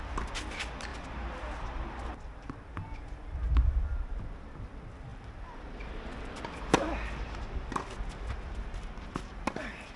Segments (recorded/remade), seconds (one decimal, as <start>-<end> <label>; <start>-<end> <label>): 0.0-10.0 recorded

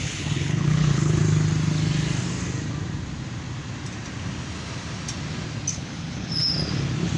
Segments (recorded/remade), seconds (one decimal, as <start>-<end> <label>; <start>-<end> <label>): 0.0-1.2 remade; 1.2-5.7 recorded; 5.7-6.3 remade; 6.3-7.2 recorded

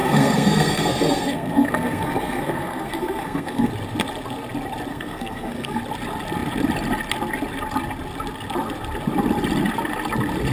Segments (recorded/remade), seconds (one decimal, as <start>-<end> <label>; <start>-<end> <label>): 0.0-3.7 remade; 3.7-4.9 recorded; 4.9-5.8 remade; 5.8-10.5 recorded

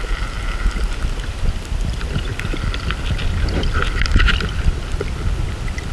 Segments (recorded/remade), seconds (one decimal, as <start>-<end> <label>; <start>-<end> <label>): 0.0-5.9 recorded

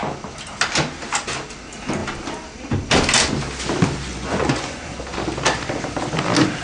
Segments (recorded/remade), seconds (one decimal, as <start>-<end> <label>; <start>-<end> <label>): 0.0-4.1 recorded; 4.1-4.9 remade; 4.9-6.6 recorded

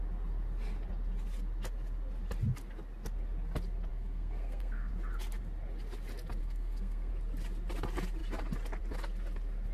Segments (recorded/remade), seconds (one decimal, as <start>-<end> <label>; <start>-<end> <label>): 0.0-3.9 recorded; 3.9-4.9 remade; 4.9-6.4 recorded; 6.4-7.1 remade; 7.1-9.7 recorded